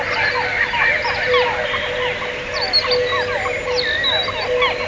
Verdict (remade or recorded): recorded